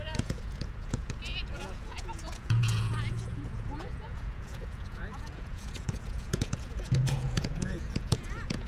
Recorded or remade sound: remade